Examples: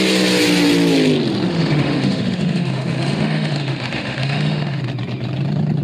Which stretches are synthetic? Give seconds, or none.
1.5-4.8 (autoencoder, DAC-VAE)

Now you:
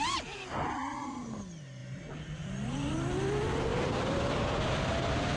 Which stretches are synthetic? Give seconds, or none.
1.8-2.9 (vocoder, BigVGAN v2); 3.7-4.5

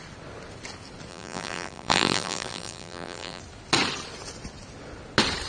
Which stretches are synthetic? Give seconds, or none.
1.1-3.4 (vocoder, BigVGAN v2)

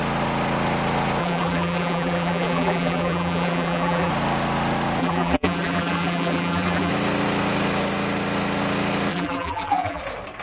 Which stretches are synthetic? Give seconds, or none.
1.2-4.1 (vocoder, BigVGAN v2); 5.0-6.9; 9.1-10.0